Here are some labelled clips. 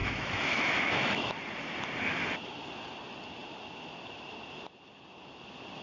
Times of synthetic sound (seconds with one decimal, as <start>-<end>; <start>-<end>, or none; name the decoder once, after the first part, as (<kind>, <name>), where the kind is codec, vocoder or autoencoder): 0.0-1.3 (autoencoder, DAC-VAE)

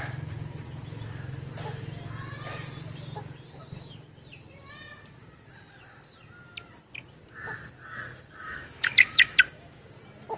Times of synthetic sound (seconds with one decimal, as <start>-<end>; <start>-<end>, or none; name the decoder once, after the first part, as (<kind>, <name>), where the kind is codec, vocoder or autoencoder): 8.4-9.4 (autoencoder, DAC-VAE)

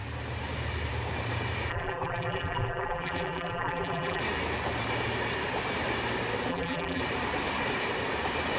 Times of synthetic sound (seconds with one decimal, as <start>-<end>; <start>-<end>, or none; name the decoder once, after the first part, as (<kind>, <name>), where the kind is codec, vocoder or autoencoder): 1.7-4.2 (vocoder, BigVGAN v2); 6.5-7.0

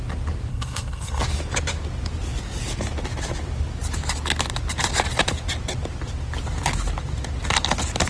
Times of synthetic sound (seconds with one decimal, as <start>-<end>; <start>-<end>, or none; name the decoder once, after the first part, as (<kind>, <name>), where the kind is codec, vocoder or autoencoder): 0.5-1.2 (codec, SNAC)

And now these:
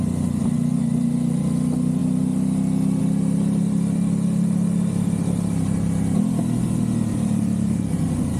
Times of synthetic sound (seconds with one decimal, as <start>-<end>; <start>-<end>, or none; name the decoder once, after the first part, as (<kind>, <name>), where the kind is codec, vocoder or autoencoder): 7.1-8.4 (vocoder, BigVGAN v2)

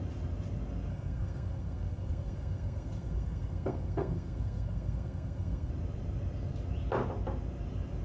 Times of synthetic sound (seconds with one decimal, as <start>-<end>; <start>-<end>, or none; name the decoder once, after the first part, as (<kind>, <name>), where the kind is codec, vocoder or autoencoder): 0.9-5.7 (codec, SNAC)